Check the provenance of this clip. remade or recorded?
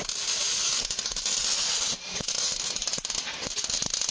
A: recorded